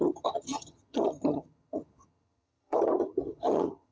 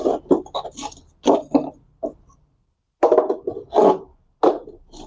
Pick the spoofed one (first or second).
first